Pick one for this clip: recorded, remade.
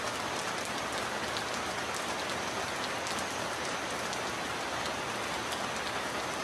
recorded